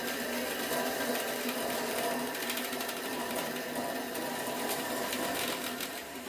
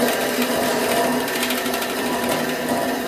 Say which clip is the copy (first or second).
first